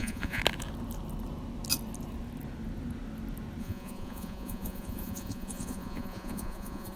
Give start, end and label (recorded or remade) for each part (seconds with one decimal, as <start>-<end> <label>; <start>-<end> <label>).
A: 0.0-0.4 remade; 0.4-3.6 recorded; 3.6-7.0 remade